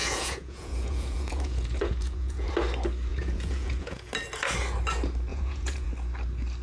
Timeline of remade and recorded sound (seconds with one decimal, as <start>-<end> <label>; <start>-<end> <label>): 0.0-2.5 remade; 2.5-3.1 recorded; 3.1-4.1 remade; 4.1-5.3 recorded; 5.3-5.9 remade; 5.9-6.6 recorded